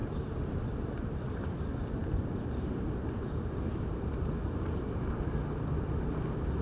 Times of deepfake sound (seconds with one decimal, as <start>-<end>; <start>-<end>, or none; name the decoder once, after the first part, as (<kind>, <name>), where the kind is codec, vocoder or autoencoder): 0.0-1.1 (vocoder, BigVGAN v2); 2.0-6.0